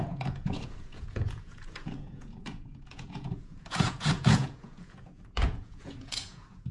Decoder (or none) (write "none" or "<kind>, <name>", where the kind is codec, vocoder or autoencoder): vocoder, Vocos